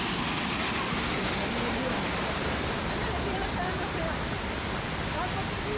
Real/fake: real